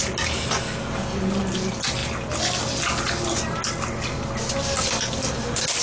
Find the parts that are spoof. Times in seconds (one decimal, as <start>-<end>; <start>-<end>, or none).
none